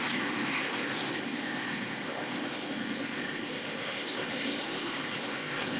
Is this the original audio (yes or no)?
no